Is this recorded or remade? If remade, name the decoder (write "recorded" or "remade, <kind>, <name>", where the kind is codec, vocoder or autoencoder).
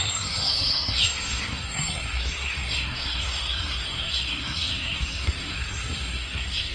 remade, codec, SNAC